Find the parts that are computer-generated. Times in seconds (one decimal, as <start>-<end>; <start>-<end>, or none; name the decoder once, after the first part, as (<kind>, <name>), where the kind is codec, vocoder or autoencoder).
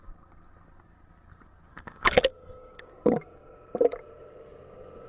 1.7-2.9 (codec, DAC)